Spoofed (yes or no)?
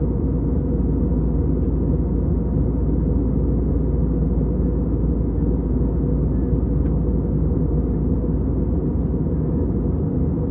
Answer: no